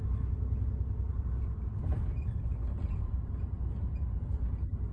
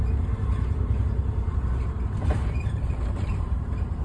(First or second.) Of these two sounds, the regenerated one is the second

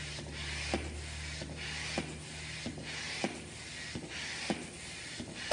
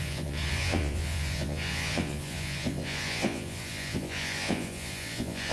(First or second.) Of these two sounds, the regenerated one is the second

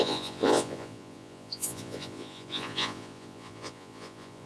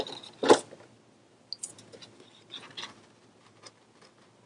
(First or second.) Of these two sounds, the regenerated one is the first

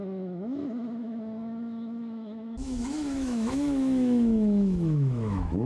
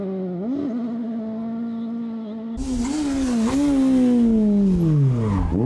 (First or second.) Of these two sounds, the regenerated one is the first